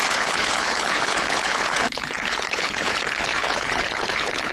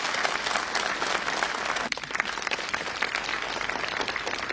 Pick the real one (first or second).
second